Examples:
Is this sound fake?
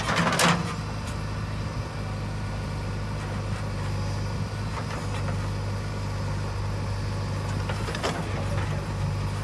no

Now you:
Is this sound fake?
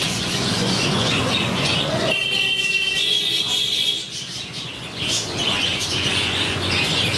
yes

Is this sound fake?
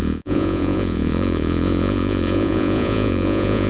yes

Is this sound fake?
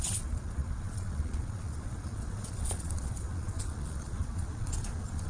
yes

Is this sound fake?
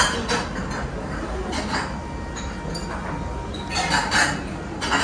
no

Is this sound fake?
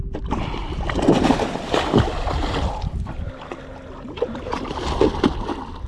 no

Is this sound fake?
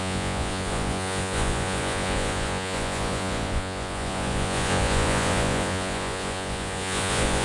yes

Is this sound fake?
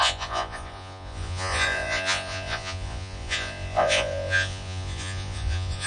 yes